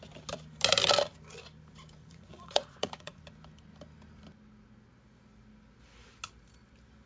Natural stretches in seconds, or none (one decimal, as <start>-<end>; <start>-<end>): 0.0-2.0; 3.2-7.1